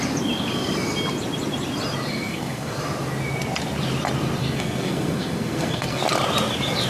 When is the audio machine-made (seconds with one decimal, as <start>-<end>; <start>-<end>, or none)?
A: 2.1-2.8; 4.4-6.0